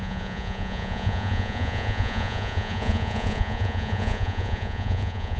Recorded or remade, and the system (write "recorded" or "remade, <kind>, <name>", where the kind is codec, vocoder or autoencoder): remade, vocoder, Vocos